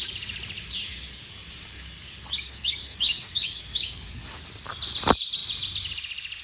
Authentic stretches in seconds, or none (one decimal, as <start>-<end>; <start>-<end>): 0.0-0.9; 4.4-6.4

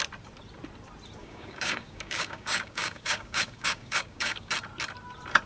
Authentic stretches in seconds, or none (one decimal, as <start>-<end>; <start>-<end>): 0.0-1.2; 4.5-5.5

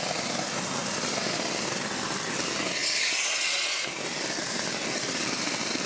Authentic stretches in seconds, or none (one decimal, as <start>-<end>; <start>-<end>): 0.0-5.9

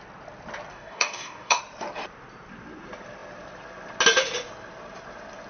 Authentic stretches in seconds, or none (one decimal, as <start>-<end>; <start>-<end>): 0.0-0.7; 1.6-5.5